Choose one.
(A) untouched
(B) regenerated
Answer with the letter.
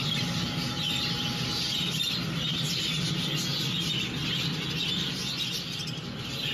A